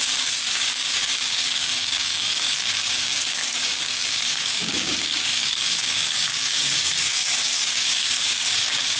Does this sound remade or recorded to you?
remade